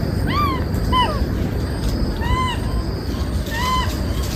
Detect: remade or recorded recorded